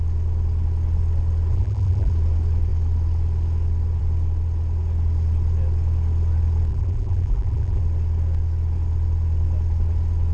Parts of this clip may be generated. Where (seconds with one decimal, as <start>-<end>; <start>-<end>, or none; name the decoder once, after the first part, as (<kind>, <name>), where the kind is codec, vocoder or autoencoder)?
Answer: 1.5-2.1 (vocoder, BigVGAN v2); 6.7-7.8